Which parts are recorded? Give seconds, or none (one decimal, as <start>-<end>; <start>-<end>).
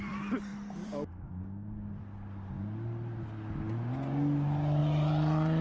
0.0-0.5; 1.1-4.8